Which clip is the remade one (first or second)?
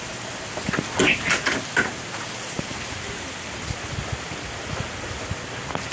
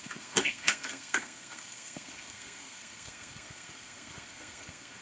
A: second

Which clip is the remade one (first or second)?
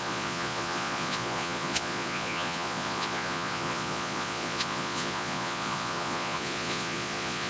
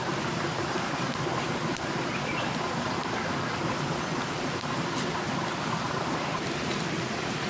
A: first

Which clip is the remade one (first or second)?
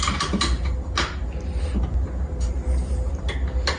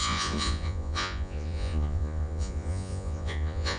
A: second